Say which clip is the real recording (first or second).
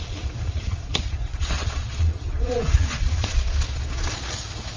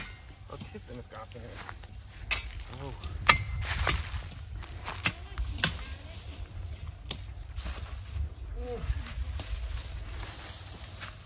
second